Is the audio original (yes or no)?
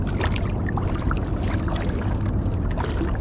yes